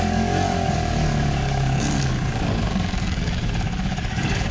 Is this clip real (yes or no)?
no